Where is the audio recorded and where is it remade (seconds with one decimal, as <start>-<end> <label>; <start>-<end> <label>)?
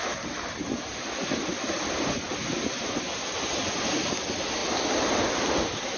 0.0-6.0 recorded